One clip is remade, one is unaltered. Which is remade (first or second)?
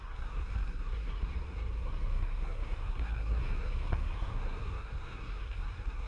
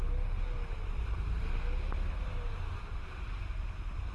first